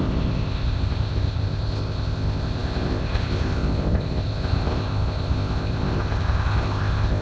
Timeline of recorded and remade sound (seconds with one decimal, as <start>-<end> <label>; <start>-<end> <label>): 0.0-7.2 remade